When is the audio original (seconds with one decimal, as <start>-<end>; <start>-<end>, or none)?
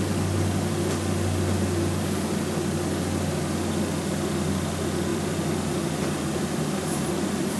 0.0-5.1